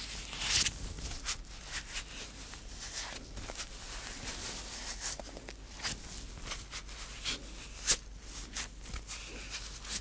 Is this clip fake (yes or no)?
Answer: no